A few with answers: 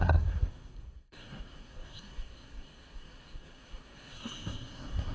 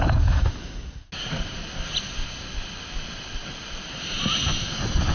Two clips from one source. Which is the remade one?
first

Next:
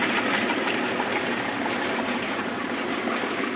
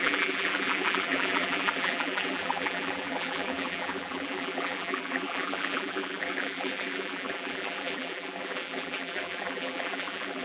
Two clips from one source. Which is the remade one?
second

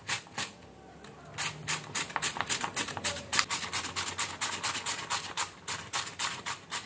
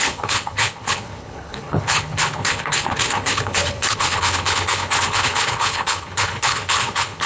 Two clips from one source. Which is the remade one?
second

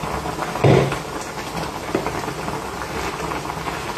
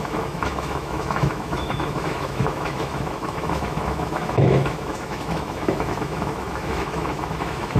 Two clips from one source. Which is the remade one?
second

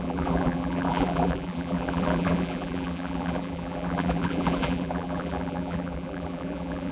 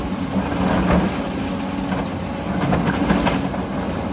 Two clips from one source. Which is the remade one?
first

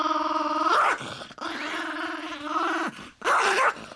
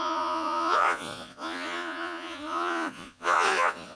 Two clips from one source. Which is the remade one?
second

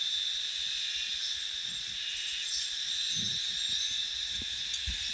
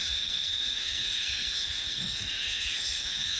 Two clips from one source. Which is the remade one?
second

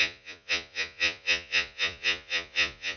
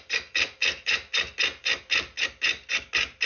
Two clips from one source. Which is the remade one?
first